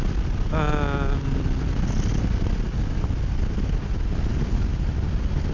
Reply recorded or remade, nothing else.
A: recorded